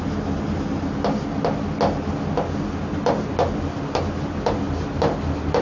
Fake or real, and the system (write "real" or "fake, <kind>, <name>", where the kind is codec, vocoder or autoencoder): real